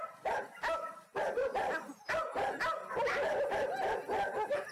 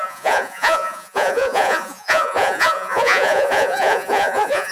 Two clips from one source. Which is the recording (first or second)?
first